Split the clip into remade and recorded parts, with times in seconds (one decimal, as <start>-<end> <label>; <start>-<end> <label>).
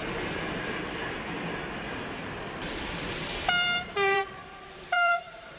0.0-1.0 remade; 1.0-2.4 recorded; 2.4-5.6 remade